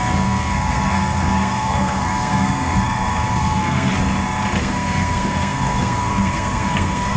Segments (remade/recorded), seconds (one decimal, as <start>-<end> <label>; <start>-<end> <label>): 0.0-3.9 remade; 3.9-4.6 recorded; 4.6-7.2 remade